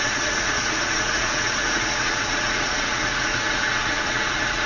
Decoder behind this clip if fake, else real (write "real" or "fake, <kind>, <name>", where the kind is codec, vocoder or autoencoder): fake, vocoder, Vocos